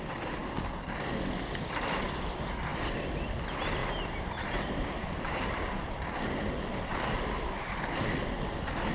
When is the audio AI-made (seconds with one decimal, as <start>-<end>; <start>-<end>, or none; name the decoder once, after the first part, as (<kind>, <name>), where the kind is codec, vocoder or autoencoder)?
3.8-6.0 (vocoder, BigVGAN v2); 6.9-7.5